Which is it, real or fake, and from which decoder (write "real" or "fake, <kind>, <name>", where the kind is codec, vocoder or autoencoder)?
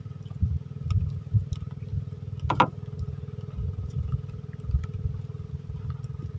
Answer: real